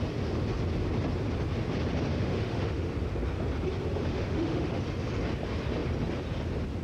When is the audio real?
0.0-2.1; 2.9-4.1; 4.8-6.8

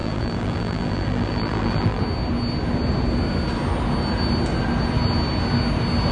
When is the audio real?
2.0-6.1

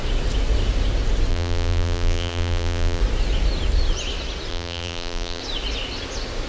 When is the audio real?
0.0-1.3; 3.0-4.5; 5.4-6.5

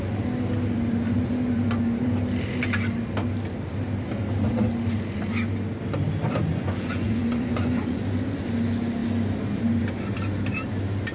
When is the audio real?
0.0-6.5; 8.0-11.1

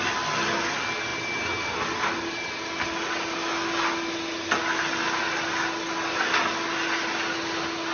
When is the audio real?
0.0-7.9

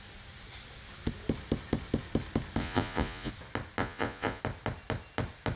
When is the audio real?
0.0-2.6; 3.3-3.8; 4.4-5.6

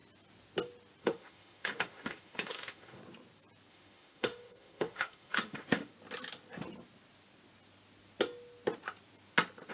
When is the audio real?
0.0-1.0; 3.0-3.7; 5.9-9.7